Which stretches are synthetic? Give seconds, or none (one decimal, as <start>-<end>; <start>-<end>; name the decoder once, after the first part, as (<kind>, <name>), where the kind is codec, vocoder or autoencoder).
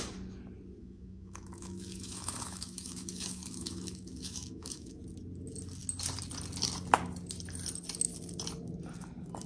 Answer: 0.8-5.0 (autoencoder, DAC-VAE)